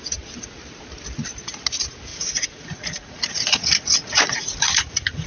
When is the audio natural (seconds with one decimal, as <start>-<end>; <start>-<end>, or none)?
0.0-2.1